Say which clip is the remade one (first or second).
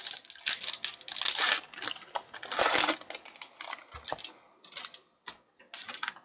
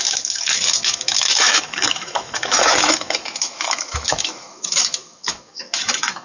second